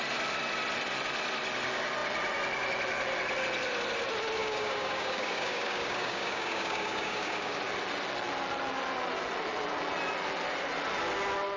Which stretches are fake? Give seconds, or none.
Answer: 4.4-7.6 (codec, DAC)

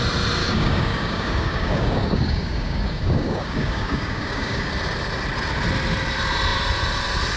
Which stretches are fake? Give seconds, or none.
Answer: 0.4-4.7 (codec, DAC)

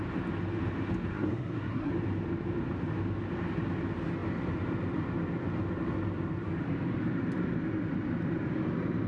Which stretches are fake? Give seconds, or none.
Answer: 1.1-1.9 (codec, SNAC)

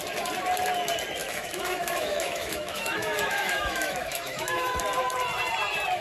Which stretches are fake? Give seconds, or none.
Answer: 1.2-4.8 (autoencoder, DAC-VAE)

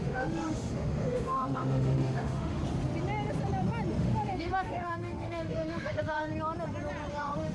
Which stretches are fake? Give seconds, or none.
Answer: 0.0-2.6 (autoencoder, DAC-VAE); 4.0-6.3; 7.1-7.5